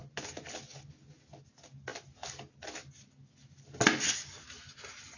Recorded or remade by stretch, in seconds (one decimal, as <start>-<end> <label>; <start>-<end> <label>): 0.0-5.2 recorded